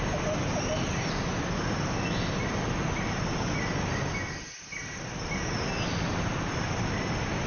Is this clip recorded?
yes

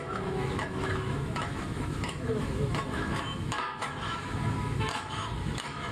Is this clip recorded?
no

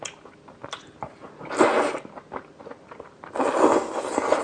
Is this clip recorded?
yes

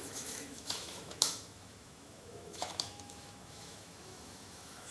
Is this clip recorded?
no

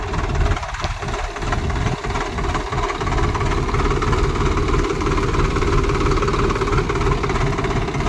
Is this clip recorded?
yes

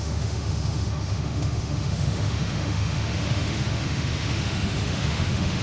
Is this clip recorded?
no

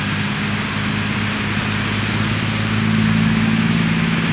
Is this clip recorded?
yes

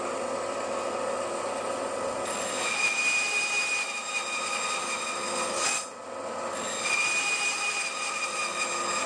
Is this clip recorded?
yes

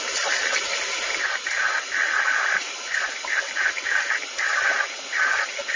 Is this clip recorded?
yes